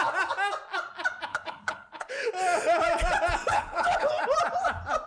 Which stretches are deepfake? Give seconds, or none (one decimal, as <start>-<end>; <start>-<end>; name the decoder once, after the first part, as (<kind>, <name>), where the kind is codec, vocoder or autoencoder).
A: 1.3-2.3 (codec, HILCodec); 3.5-4.1